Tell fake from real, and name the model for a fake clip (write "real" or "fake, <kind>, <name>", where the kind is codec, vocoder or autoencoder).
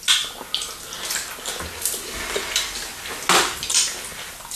real